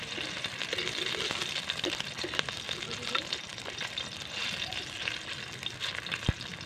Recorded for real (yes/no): yes